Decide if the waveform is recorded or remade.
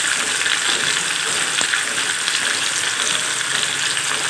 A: recorded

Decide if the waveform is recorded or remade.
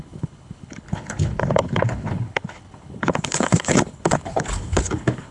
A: remade